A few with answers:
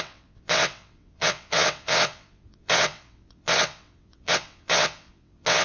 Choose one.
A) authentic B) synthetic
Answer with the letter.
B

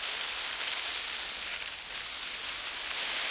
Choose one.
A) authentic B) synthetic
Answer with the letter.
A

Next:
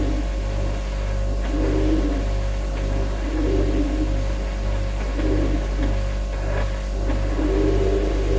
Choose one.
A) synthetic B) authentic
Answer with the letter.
B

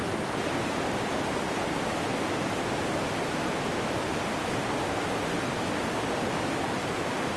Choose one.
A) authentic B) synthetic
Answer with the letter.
A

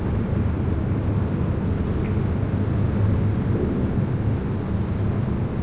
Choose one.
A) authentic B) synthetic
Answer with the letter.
A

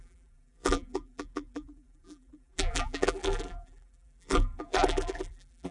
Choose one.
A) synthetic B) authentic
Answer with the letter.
A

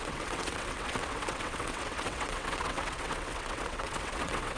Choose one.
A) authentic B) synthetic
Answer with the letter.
B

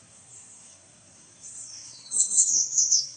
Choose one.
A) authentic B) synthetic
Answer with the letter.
B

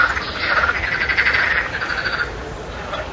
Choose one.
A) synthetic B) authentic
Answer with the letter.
B